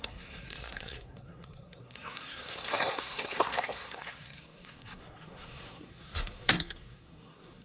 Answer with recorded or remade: remade